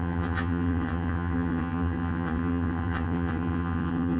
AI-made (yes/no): yes